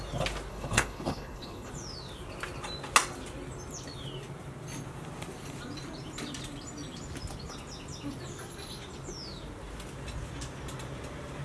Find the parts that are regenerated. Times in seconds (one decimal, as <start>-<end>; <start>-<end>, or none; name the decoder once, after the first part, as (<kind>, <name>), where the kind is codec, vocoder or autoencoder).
0.5-1.7 (codec, HILCodec)